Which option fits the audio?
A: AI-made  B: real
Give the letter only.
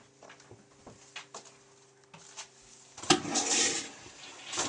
B